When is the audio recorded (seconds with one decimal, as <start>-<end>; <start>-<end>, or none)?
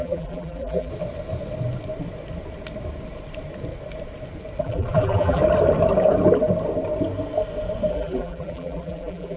0.9-4.6; 5.4-7.9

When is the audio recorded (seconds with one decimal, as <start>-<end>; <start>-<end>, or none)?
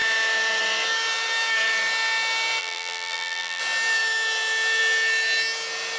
0.0-2.6; 3.6-6.0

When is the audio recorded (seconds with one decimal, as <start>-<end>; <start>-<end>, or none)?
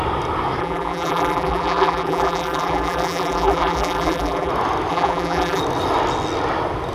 0.0-0.6; 4.5-4.9; 5.6-6.9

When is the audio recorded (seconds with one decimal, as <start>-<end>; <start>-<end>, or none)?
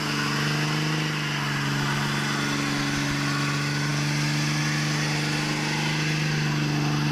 0.0-7.1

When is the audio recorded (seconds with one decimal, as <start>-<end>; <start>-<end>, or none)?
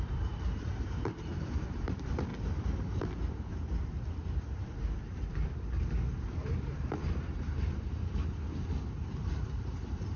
2.3-3.5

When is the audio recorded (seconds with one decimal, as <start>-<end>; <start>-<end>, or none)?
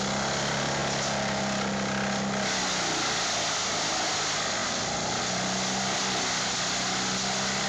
0.0-4.6; 5.2-7.7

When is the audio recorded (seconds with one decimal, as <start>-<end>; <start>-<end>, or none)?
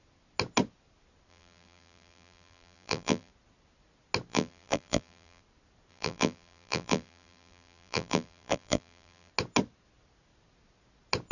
0.0-1.3; 3.3-4.3; 5.4-5.9; 9.3-11.3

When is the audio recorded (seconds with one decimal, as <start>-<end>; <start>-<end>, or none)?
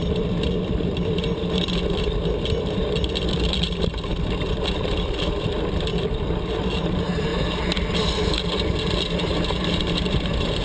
0.0-10.6